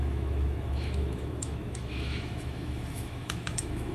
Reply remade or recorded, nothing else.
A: remade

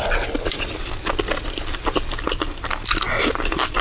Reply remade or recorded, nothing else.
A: recorded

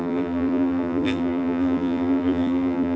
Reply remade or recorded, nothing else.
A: remade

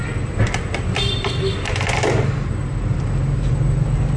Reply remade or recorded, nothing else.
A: recorded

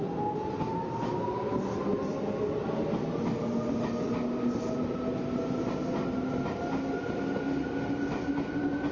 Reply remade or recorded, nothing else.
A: recorded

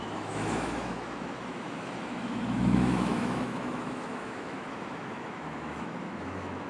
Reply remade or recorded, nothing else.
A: remade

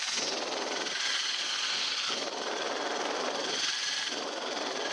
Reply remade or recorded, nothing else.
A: recorded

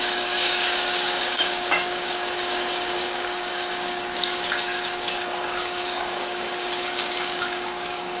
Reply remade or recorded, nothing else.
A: remade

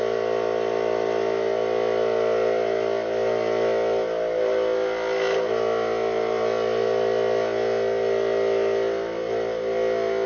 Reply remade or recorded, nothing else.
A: recorded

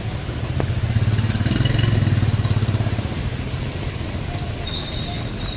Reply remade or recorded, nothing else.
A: recorded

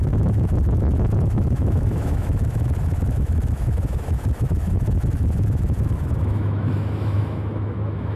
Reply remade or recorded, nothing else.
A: remade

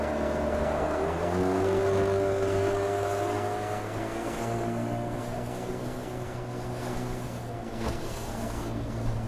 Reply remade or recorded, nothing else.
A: remade